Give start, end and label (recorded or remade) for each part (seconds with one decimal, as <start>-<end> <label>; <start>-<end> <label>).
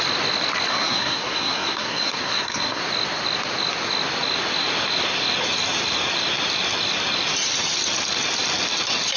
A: 0.0-0.7 recorded; 0.7-2.8 remade; 2.8-9.2 recorded